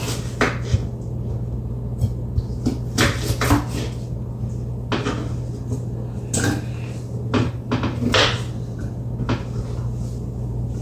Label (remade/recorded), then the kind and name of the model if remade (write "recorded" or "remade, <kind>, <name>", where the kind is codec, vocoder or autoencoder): recorded